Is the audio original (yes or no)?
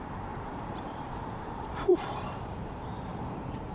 no